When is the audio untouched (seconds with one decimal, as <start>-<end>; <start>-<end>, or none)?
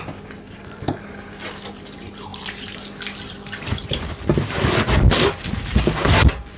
0.0-0.4; 1.0-6.6